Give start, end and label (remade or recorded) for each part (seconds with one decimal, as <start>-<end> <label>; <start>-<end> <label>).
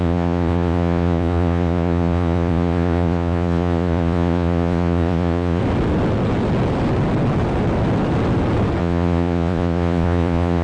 0.0-5.6 remade; 5.6-8.8 recorded; 8.8-10.6 remade